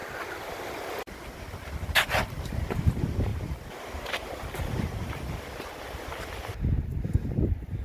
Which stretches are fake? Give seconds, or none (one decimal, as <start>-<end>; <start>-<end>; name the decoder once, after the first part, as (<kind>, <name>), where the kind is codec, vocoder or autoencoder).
none